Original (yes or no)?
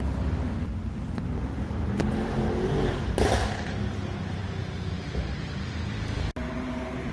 yes